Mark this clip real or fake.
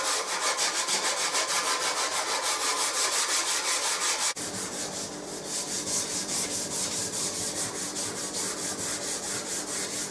real